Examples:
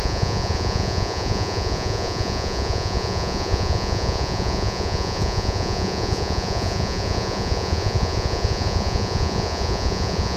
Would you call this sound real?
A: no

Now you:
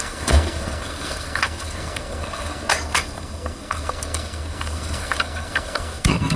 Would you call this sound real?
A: no